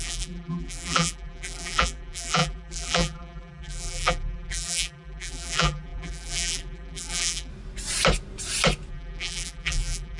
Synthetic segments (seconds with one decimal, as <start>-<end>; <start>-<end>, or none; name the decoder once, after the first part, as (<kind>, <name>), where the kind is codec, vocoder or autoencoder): 0.0-7.5 (vocoder, BigVGAN v2); 8.9-10.2